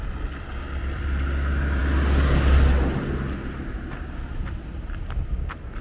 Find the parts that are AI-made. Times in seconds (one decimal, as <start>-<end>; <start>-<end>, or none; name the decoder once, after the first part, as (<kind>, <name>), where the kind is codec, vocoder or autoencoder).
none